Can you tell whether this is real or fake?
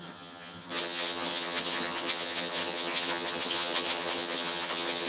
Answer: fake